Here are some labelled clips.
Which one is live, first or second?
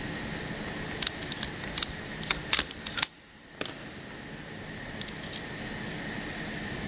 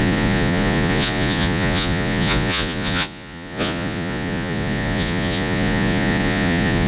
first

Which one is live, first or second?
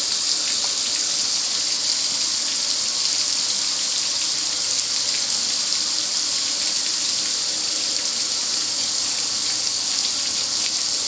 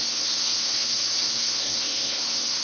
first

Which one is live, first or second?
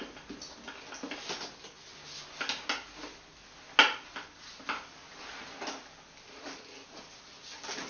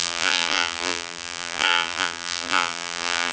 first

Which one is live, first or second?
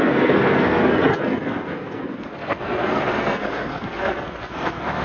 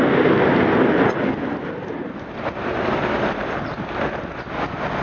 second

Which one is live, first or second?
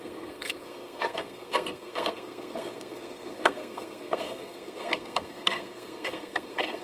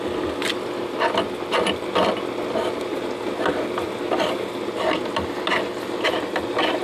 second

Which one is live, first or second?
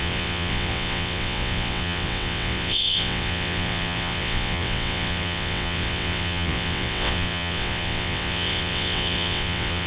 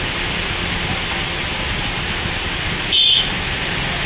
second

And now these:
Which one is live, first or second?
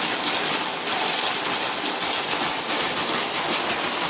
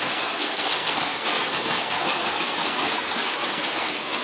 first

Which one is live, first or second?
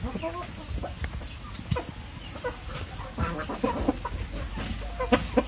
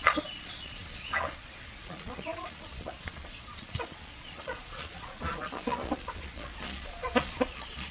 first